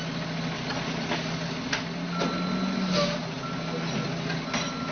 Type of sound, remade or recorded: recorded